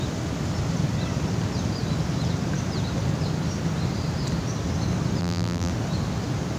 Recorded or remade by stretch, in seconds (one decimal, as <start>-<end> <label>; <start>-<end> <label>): 0.0-5.2 recorded; 5.2-5.7 remade; 5.7-6.6 recorded